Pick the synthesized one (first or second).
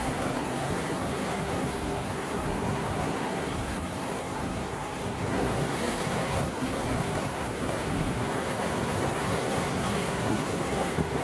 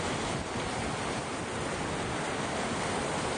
first